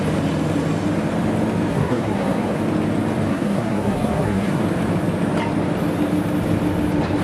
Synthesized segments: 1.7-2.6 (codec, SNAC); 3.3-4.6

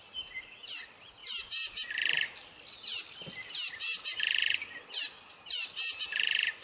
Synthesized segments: 0.0-1.2 (vocoder, BigVGAN v2); 4.9-6.6

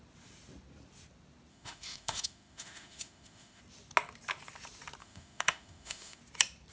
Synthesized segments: 1.5-3.6 (autoencoder, DAC-VAE); 5.0-6.2

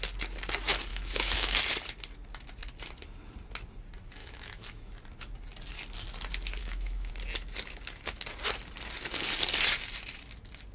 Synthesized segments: 0.9-1.6 (autoencoder, DAC-VAE); 4.2-4.9; 6.6-7.1

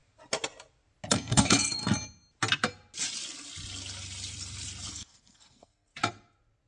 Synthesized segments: 1.1-1.8 (codec, SNAC); 4.9-5.9